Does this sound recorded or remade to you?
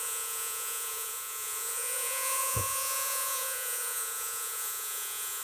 remade